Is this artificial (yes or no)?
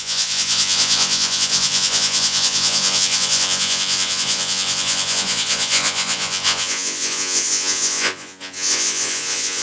yes